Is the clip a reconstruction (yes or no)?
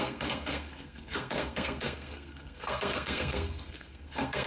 yes